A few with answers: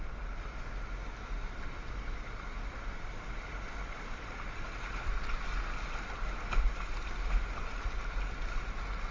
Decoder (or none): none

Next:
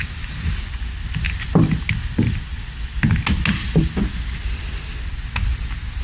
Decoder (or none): none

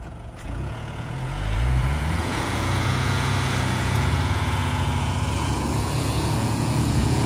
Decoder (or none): vocoder, Vocos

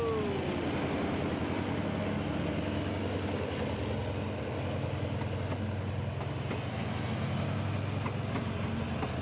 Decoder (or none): none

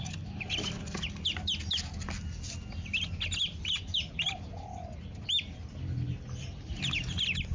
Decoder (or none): none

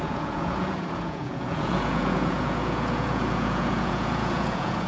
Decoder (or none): vocoder, Vocos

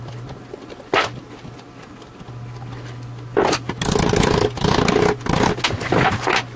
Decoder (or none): none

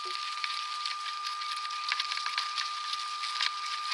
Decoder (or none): none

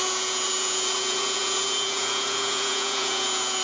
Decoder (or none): vocoder, Vocos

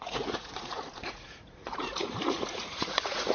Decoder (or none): vocoder, Vocos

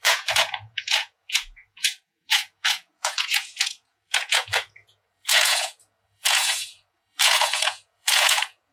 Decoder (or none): vocoder, Vocos